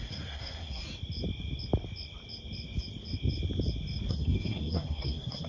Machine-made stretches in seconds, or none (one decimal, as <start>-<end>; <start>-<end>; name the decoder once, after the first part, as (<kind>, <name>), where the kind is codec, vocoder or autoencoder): 0.0-0.8 (codec, SNAC); 4.1-5.5